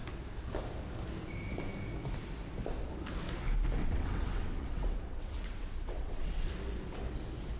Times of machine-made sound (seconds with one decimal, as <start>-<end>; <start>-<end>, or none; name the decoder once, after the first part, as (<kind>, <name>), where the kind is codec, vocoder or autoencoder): 3.8-6.5 (vocoder, WaveNeXt)